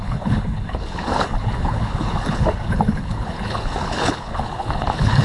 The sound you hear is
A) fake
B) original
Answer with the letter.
A